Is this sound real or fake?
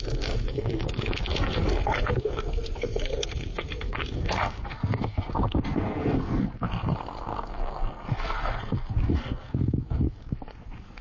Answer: fake